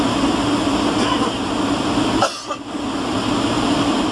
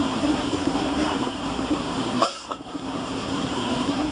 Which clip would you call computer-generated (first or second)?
second